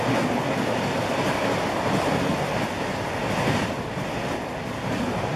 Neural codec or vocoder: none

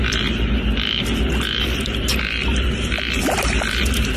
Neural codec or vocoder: none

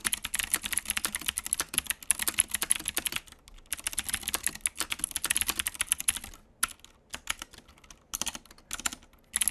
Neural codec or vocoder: none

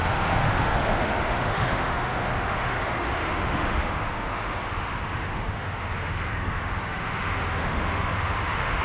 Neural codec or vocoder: autoencoder, DAC-VAE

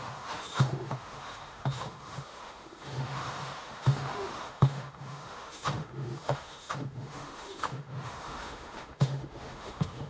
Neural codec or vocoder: autoencoder, DAC-VAE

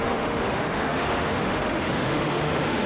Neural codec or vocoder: autoencoder, DAC-VAE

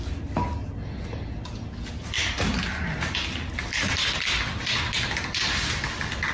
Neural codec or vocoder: none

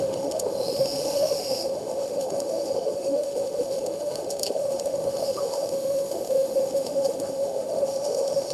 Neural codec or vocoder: autoencoder, DAC-VAE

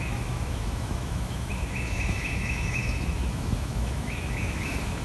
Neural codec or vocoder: autoencoder, DAC-VAE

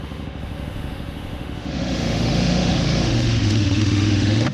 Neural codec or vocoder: autoencoder, DAC-VAE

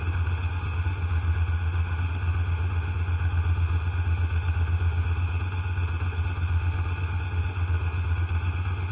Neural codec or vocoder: autoencoder, DAC-VAE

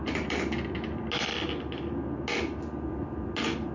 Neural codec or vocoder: none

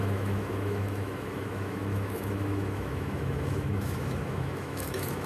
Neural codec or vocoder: autoencoder, DAC-VAE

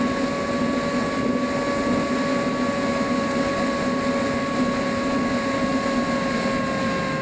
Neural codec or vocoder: none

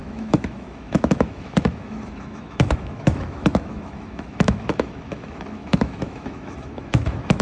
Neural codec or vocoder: autoencoder, DAC-VAE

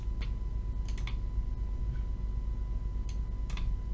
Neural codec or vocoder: none